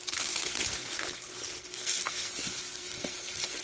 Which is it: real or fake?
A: fake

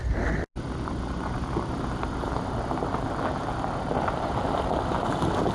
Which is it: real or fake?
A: real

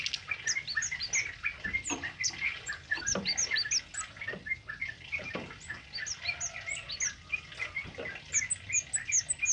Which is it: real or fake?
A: real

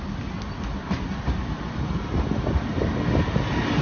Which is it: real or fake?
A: real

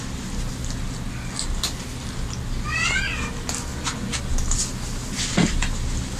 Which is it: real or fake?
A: real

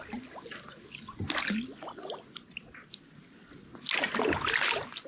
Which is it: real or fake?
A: real